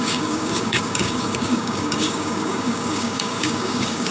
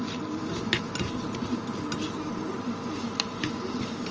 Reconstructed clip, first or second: first